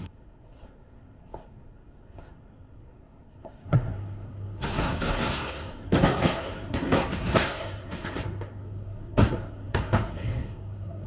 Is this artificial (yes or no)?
yes